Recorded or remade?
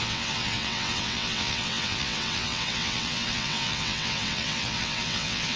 remade